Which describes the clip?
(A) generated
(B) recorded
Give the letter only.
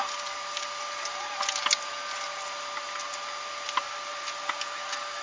B